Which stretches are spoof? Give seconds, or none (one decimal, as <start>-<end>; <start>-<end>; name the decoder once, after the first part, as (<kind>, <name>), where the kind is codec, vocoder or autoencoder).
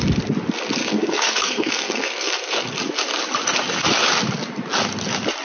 0.8-2.7 (codec, SNAC)